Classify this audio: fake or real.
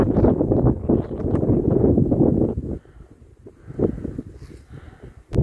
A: real